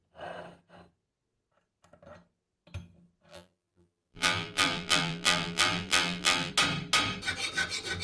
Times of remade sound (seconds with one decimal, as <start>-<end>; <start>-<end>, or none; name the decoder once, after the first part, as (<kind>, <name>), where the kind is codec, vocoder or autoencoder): 3.3-6.5 (vocoder, BigVGAN v2)